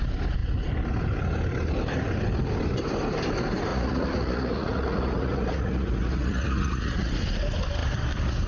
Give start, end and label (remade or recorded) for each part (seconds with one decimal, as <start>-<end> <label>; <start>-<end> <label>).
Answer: 0.0-3.7 recorded; 3.7-7.1 remade; 7.1-8.5 recorded

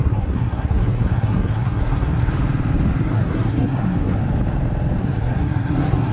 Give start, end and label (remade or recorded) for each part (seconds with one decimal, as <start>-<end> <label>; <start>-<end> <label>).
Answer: 0.0-2.3 remade; 2.3-3.0 recorded; 3.0-4.2 remade; 4.2-5.0 recorded; 5.0-6.1 remade

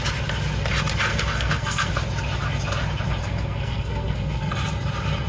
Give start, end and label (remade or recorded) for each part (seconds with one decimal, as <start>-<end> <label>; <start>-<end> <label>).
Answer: 0.0-1.1 recorded; 1.1-1.9 remade; 1.9-3.2 recorded; 3.2-4.5 remade; 4.5-5.3 recorded

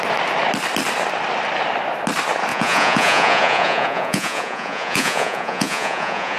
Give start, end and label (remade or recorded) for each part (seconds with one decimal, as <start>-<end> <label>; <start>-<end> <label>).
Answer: 0.0-2.5 recorded; 2.5-6.4 remade

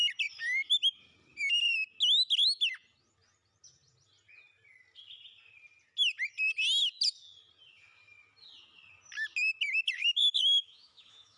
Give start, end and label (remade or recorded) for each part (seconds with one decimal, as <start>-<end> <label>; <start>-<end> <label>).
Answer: 0.0-10.0 recorded; 10.0-11.4 remade

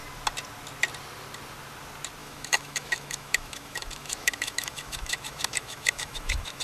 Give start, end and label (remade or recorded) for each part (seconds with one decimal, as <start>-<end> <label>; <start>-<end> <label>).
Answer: 0.0-2.2 recorded; 2.2-6.6 remade

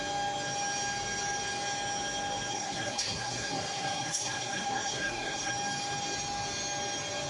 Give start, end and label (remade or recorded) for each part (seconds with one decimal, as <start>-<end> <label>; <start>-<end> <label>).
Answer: 0.0-2.5 recorded; 2.5-5.5 remade; 5.5-7.3 recorded